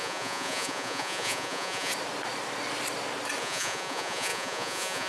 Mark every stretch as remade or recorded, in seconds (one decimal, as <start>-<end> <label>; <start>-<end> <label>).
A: 0.0-1.9 remade; 1.9-3.4 recorded; 3.4-5.1 remade